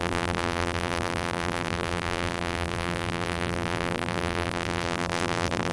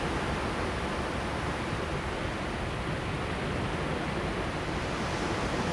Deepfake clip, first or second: first